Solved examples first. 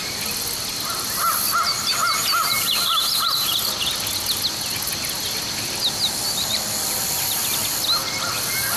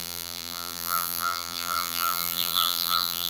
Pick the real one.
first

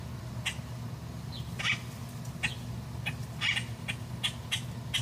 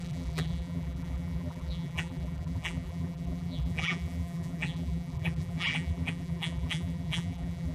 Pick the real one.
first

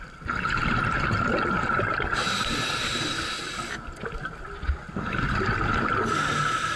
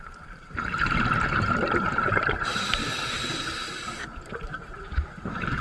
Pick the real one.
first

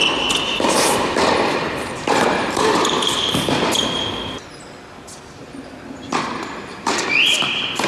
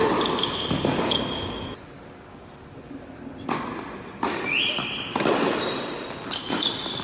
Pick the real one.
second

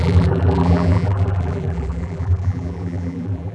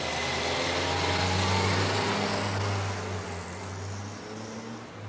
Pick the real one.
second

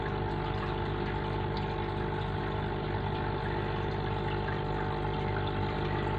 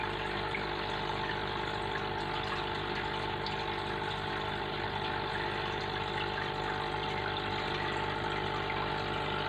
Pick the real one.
first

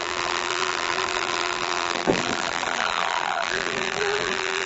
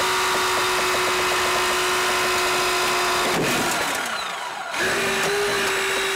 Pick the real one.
second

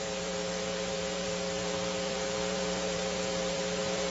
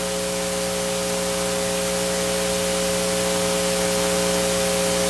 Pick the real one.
second